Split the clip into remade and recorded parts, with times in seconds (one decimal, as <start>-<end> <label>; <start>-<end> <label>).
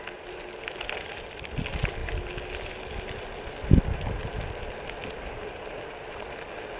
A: 0.0-6.8 recorded